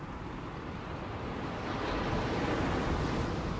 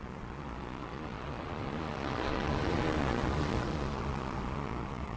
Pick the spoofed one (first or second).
second